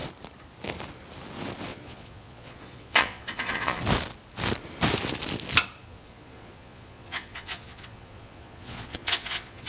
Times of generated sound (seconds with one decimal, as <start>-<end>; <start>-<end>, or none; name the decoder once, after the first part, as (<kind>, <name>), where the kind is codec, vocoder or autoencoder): 1.7-3.8 (vocoder, Vocos); 5.8-9.7